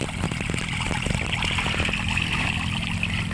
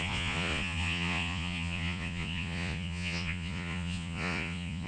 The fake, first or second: second